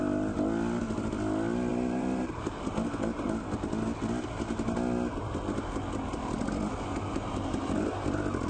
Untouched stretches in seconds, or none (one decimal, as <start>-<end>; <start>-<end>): 0.0-1.7; 2.7-7.1; 7.8-8.5